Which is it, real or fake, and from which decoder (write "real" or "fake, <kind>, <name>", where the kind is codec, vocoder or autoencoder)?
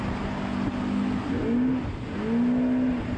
real